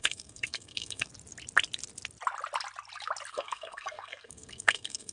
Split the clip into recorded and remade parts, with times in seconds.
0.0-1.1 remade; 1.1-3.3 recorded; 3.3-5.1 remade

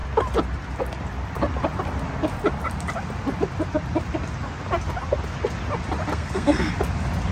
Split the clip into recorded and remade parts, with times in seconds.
0.0-6.1 recorded; 6.1-6.7 remade; 6.7-7.3 recorded

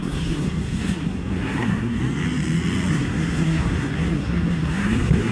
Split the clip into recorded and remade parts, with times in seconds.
0.0-2.0 remade; 2.0-2.9 recorded; 2.9-5.3 remade